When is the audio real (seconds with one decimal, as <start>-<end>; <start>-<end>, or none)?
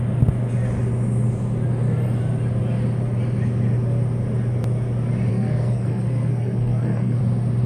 0.0-5.3; 7.2-7.7